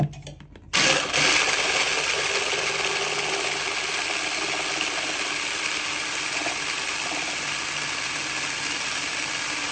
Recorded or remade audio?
recorded